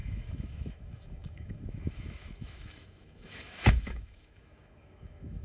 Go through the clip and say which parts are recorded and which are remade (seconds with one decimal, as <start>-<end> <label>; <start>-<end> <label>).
0.0-5.4 remade